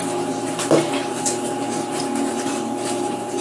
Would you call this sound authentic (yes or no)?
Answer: yes